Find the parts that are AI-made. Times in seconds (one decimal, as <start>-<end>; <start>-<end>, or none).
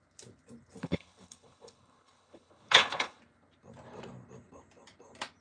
0.8-3.2